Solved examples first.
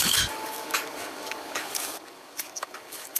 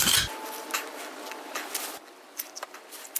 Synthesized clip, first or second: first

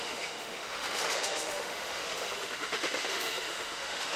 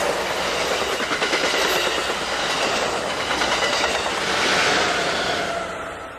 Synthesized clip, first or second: first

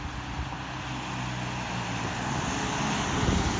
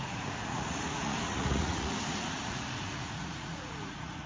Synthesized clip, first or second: second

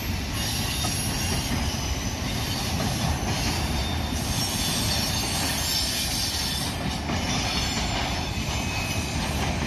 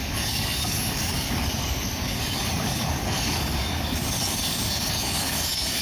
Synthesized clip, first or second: second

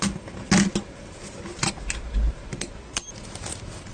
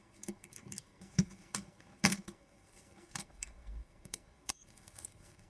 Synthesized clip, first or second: second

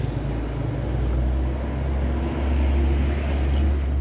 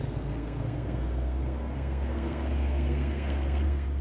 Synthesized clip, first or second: second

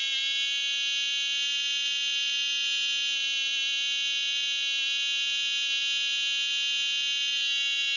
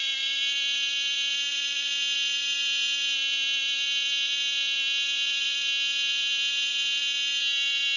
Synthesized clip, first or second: second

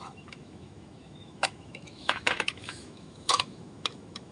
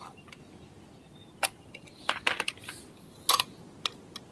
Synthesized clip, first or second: first